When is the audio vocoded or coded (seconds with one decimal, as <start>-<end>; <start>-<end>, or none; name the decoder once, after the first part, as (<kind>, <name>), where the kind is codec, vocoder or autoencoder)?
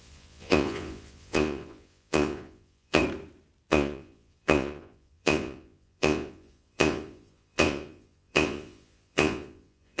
0.0-3.0 (vocoder, Vocos); 3.7-10.0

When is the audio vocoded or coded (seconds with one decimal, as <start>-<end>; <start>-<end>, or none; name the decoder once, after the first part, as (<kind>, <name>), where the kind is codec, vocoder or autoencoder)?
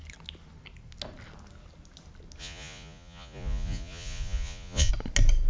2.4-4.9 (vocoder, Vocos)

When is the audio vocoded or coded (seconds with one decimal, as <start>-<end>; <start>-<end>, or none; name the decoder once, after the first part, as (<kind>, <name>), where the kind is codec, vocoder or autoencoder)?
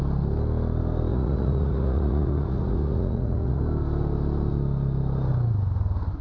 1.1-3.6 (vocoder, Vocos)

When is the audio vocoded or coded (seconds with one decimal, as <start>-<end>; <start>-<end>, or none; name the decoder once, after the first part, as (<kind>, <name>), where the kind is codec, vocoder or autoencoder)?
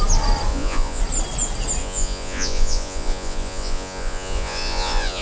0.5-1.0 (vocoder, Vocos); 1.8-5.2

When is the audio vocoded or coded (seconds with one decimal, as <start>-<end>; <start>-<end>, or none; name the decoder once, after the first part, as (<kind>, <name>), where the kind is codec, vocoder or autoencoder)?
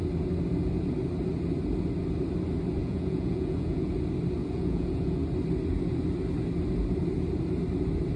2.8-3.9 (vocoder, Vocos); 4.4-5.2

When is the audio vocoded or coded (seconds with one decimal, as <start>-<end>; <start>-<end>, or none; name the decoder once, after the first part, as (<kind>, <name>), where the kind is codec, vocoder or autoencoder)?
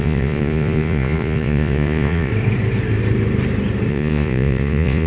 0.0-2.3 (vocoder, Vocos); 3.9-5.1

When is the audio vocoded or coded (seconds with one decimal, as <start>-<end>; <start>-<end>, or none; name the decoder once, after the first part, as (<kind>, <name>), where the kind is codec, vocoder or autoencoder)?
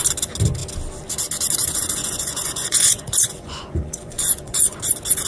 1.6-4.8 (vocoder, Vocos)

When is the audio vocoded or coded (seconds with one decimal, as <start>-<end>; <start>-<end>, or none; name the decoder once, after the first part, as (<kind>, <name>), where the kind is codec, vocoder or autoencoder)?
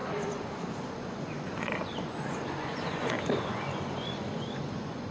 0.0-5.1 (vocoder, Vocos)